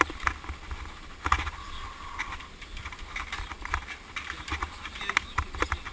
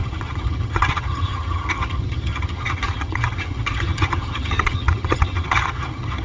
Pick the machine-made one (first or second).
second